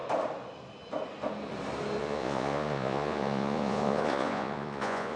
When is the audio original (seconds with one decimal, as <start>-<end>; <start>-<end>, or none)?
0.0-2.0